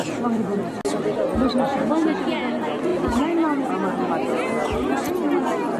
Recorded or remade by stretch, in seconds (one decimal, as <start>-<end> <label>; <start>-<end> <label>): 0.0-5.8 recorded